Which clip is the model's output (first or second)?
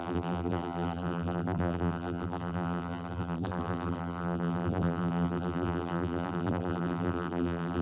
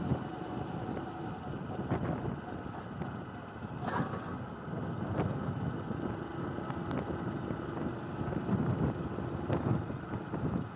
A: first